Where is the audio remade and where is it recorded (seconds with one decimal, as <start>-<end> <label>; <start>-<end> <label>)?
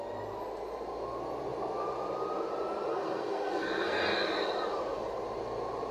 0.0-2.9 recorded; 2.9-4.0 remade; 4.0-5.9 recorded